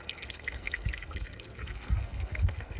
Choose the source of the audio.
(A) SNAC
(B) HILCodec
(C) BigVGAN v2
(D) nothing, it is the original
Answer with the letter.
A